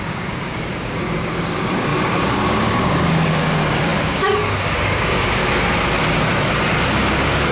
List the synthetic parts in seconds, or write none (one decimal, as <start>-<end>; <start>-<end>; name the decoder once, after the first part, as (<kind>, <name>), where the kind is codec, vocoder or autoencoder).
0.0-5.4 (codec, DAC); 7.1-7.5